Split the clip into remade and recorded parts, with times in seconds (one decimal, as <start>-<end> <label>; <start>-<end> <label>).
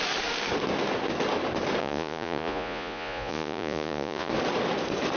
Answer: 0.0-1.8 recorded; 1.8-4.3 remade; 4.3-5.2 recorded